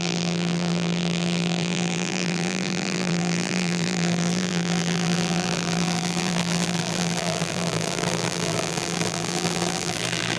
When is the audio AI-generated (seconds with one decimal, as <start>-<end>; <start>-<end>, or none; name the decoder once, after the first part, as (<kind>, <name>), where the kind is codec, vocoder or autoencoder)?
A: 0.0-10.4 (vocoder, BigVGAN v2)